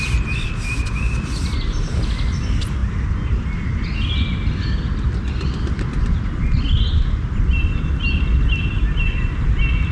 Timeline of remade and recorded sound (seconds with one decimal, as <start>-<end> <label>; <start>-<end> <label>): 0.0-9.9 recorded